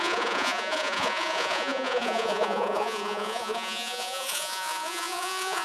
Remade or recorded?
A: remade